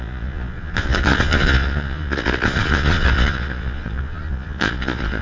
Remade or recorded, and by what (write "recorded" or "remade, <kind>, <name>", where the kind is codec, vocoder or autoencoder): remade, vocoder, Vocos